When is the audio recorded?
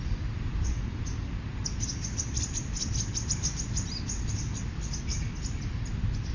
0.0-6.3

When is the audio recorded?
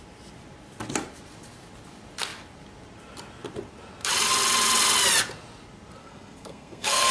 0.0-6.0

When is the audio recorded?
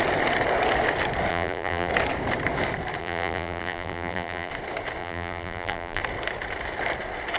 0.0-1.3; 1.9-3.0; 4.5-5.0; 6.0-7.4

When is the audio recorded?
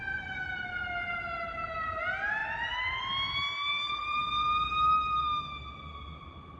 2.4-3.9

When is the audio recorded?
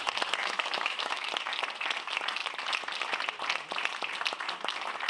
0.0-0.4; 1.3-5.1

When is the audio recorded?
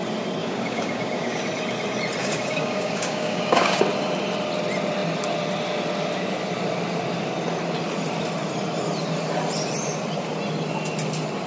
0.0-0.4; 1.4-2.2; 3.8-11.5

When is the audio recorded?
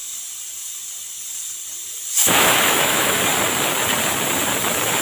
0.0-2.2; 3.2-5.0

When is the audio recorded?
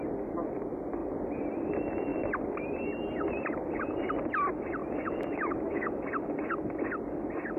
0.0-4.8; 6.0-7.6